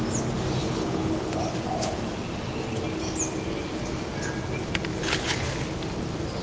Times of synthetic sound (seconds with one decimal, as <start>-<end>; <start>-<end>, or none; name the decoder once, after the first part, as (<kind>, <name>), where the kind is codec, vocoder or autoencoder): 0.6-1.5 (codec, HILCodec); 4.9-5.7